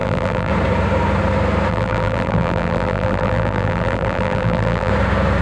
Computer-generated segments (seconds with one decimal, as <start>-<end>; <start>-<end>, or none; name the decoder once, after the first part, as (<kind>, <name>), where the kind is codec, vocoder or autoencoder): 0.0-0.5 (vocoder, BigVGAN v2); 1.7-4.9